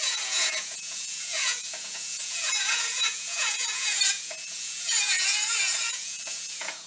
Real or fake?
fake